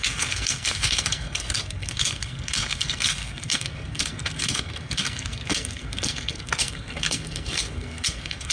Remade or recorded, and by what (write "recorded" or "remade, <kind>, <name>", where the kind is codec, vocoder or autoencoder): remade, codec, SNAC